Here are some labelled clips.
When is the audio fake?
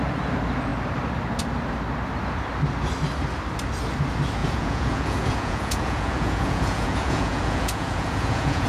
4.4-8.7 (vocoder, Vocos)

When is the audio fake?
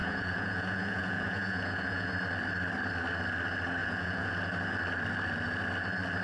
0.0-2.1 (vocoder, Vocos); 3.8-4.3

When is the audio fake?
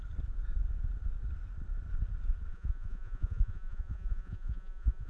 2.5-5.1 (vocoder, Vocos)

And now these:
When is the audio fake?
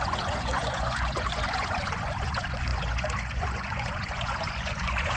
0.0-5.2 (vocoder, Vocos)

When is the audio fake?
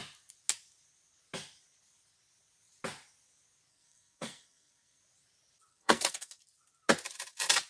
3.7-5.0 (codec, SNAC); 5.7-6.4